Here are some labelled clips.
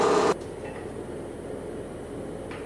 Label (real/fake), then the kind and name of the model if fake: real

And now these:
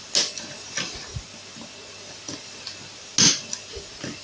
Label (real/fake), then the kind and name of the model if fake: real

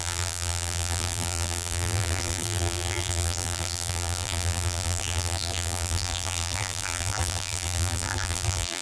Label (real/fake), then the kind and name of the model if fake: fake, vocoder, BigVGAN v2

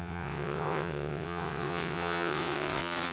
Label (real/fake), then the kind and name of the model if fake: fake, vocoder, WaveNeXt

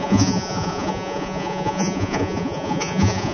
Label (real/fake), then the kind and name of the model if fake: fake, vocoder, Vocos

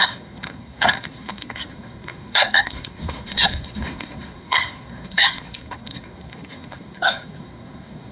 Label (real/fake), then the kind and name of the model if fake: fake, codec, SNAC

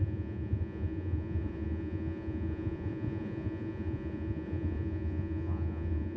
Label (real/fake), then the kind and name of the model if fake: fake, vocoder, Vocos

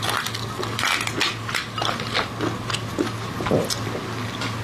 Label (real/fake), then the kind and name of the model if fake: real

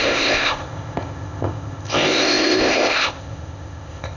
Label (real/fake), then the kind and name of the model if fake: fake, codec, ZipCodec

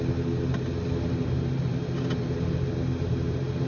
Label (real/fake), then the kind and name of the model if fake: real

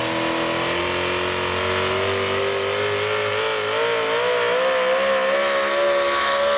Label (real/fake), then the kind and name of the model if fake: real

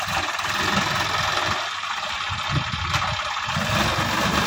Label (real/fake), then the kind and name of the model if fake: real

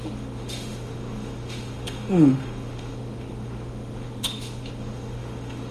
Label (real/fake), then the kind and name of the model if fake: fake, autoencoder, DAC-VAE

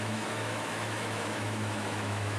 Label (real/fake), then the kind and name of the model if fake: fake, autoencoder, DAC-VAE